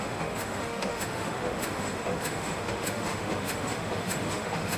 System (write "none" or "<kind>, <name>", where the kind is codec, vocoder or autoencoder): autoencoder, DAC-VAE